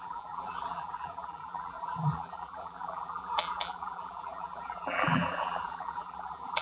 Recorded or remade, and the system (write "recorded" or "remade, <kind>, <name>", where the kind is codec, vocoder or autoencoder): remade, vocoder, BigVGAN v2